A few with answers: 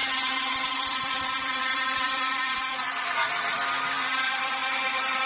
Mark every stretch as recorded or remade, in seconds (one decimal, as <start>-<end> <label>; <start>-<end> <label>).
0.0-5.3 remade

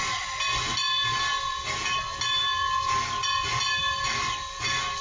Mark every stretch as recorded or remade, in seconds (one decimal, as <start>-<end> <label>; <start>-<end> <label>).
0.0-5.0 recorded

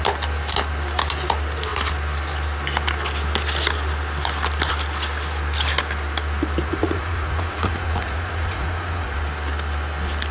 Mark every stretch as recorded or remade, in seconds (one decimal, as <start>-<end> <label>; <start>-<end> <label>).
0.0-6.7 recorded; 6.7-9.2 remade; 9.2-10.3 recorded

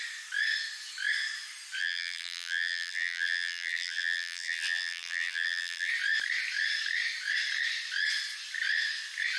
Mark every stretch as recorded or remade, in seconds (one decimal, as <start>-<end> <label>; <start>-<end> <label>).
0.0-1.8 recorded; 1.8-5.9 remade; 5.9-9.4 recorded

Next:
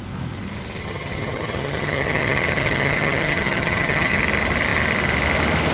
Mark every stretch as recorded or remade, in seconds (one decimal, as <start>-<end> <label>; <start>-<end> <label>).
0.0-0.8 recorded; 0.8-4.2 remade; 4.2-5.7 recorded